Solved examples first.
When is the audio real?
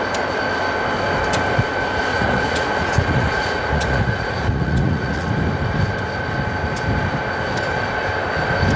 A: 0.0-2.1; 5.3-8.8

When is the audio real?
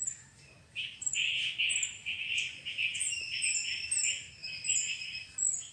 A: 0.0-2.0; 2.6-5.7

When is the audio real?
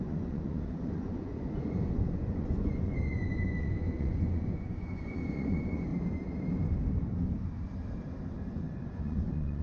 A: 5.9-8.5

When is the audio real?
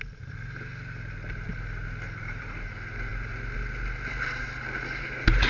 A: 0.0-5.5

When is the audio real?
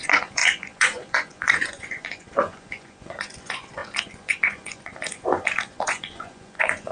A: none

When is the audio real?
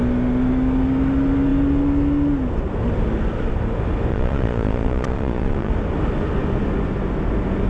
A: 0.0-4.1; 5.7-7.7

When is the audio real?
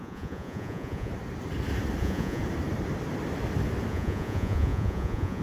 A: 1.1-2.0; 2.4-3.9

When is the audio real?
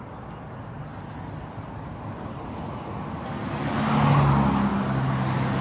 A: 0.0-5.6